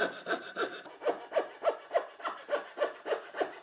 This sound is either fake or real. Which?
real